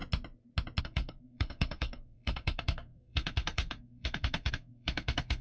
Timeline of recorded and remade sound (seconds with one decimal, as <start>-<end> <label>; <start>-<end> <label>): 0.0-0.8 recorded; 0.8-5.4 remade